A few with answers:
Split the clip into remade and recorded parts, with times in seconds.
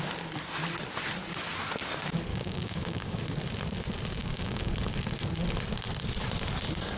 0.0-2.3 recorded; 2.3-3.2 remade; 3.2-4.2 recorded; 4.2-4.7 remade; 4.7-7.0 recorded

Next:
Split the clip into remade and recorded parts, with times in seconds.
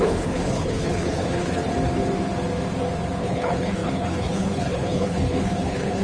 0.0-1.7 remade; 1.7-3.2 recorded; 3.2-6.0 remade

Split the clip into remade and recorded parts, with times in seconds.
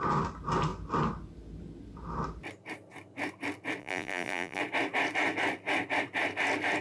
0.0-3.8 recorded; 3.8-4.6 remade; 4.6-6.8 recorded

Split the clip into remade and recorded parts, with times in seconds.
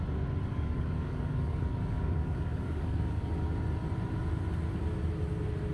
0.0-0.5 recorded; 0.5-3.3 remade; 3.3-5.7 recorded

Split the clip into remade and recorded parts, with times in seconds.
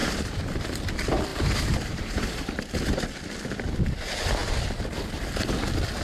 0.0-1.3 recorded; 1.3-2.4 remade; 2.4-6.0 recorded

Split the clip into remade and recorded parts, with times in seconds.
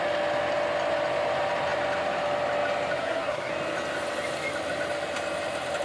0.0-3.0 recorded; 3.0-3.5 remade; 3.5-5.8 recorded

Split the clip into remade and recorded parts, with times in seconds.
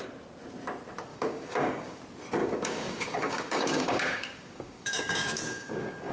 0.0-1.1 recorded; 1.1-2.0 remade; 2.0-2.4 recorded; 2.4-6.1 remade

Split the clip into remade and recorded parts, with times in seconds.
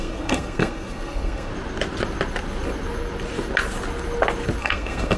0.0-1.5 remade; 1.5-4.6 recorded; 4.6-5.2 remade